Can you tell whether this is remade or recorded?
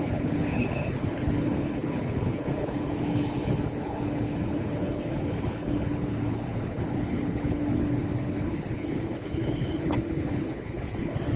remade